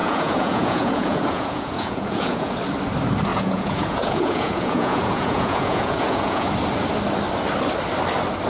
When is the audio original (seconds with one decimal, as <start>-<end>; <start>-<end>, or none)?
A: 2.6-3.3; 6.5-8.5